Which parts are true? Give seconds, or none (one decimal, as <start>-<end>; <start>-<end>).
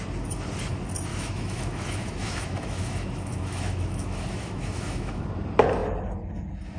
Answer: 0.0-1.1; 5.2-6.8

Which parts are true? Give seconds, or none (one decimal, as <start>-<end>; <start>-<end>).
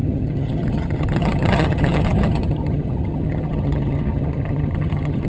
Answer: none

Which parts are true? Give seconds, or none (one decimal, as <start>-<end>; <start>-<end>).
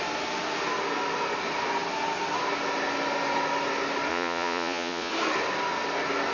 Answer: 0.0-4.1; 5.1-6.3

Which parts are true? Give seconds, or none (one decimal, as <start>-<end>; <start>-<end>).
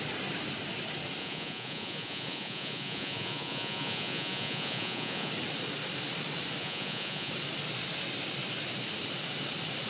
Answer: 0.0-1.2; 5.3-6.6; 7.3-9.9